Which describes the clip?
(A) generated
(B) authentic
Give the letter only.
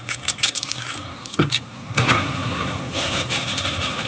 A